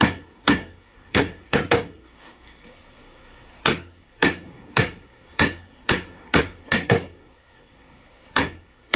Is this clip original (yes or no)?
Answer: no